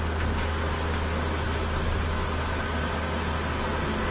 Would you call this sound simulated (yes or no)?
no